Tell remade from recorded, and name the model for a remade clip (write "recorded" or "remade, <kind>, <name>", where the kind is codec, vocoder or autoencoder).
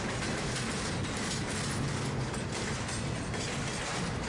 recorded